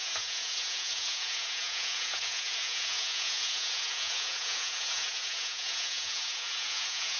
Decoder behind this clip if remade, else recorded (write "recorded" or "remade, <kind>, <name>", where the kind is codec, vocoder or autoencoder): remade, vocoder, Vocos